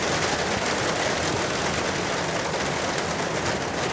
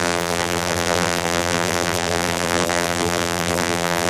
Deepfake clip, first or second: second